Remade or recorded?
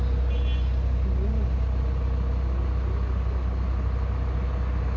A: recorded